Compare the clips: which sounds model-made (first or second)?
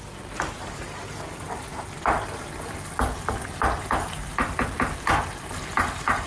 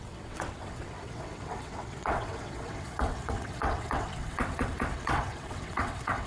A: second